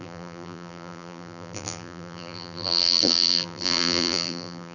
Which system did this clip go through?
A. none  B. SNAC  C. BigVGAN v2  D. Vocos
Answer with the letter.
C